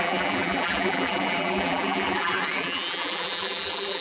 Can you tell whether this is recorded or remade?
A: remade